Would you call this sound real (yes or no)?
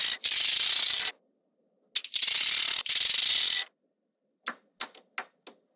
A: yes